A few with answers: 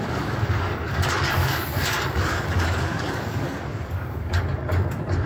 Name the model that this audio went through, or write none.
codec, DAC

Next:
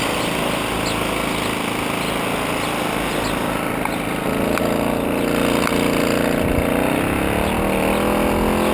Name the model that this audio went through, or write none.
none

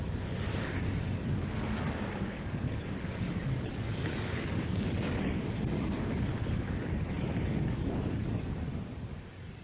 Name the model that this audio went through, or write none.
codec, DAC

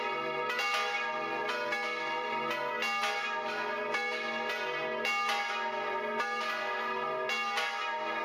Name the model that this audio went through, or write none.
none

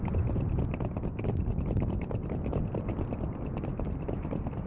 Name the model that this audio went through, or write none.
none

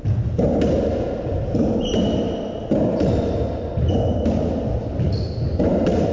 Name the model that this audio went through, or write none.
none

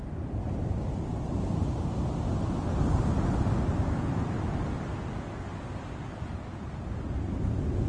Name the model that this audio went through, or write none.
none